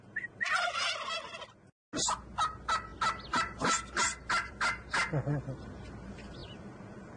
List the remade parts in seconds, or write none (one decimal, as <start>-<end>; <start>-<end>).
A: none